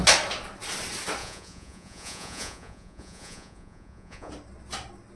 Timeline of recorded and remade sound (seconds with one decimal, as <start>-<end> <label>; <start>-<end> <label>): 0.0-1.2 recorded; 1.2-4.3 remade; 4.3-5.2 recorded